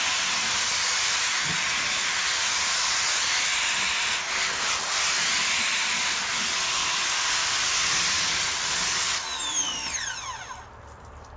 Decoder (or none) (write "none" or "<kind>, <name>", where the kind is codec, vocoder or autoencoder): none